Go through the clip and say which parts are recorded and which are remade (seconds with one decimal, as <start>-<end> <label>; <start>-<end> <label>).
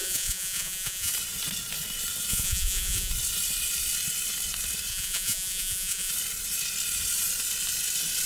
0.0-1.1 remade; 1.1-2.3 recorded; 2.3-3.1 remade; 3.1-4.9 recorded; 4.9-6.1 remade; 6.1-8.3 recorded